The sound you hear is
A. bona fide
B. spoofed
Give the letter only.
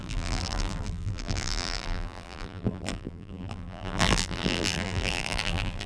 B